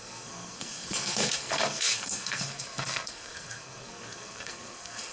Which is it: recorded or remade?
remade